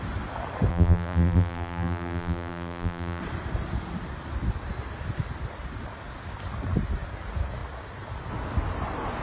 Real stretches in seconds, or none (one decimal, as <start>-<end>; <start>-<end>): 0.0-0.7; 3.2-9.2